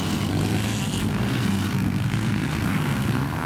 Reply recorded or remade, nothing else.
remade